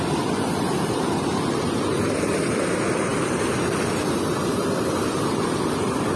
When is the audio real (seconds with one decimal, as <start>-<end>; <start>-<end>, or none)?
none